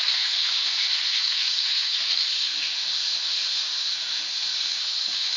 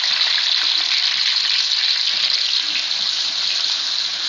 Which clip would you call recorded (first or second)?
second